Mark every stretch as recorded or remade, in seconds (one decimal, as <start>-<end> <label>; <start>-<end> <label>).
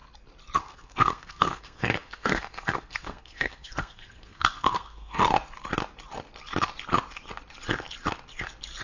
0.0-0.6 recorded; 0.6-5.2 remade; 5.2-8.8 recorded